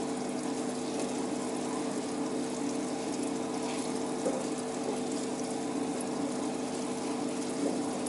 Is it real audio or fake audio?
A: real